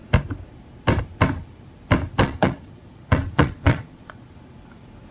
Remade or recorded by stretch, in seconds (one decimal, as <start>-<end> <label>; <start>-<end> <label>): 0.0-2.2 recorded; 2.2-4.3 remade; 4.3-5.1 recorded